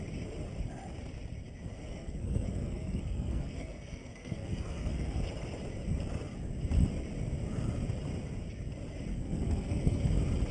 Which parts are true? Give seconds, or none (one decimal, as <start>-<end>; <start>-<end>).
0.0-1.7; 5.2-9.1; 10.0-10.5